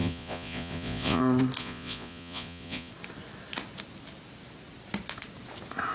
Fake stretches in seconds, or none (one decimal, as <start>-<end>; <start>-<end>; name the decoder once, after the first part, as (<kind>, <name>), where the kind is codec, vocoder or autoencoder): 0.0-1.2 (vocoder, Vocos); 1.6-2.9